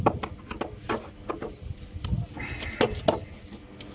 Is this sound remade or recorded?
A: recorded